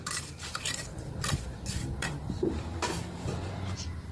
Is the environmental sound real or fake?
fake